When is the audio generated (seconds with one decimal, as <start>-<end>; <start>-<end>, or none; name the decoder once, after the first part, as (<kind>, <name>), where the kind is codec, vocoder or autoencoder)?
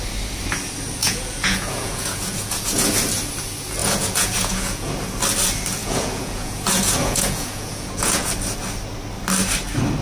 1.0-2.9 (vocoder, Vocos); 3.8-4.9; 5.8-8.3